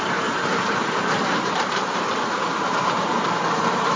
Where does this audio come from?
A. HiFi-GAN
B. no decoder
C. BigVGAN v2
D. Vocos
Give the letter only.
C